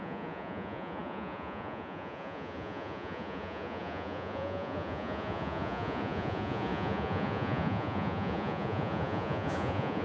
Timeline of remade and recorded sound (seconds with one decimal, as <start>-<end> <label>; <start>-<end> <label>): 0.0-10.0 remade